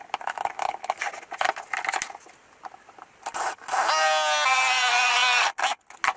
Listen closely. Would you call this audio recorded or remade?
recorded